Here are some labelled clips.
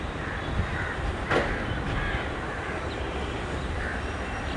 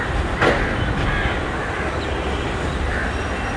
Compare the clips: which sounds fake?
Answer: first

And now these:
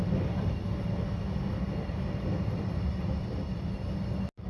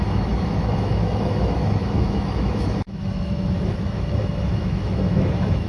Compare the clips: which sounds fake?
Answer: second